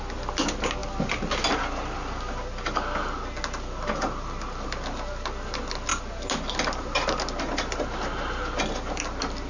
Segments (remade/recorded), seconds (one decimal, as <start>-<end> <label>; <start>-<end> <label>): 0.0-9.5 recorded